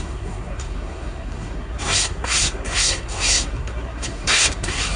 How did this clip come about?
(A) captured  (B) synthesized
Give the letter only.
B